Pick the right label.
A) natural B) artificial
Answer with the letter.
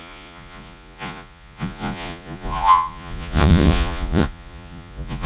B